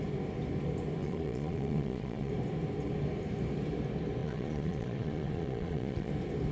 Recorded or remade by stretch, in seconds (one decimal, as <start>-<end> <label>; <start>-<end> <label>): 0.0-1.0 recorded; 1.0-2.3 remade; 2.3-4.2 recorded; 4.2-6.1 remade; 6.1-6.5 recorded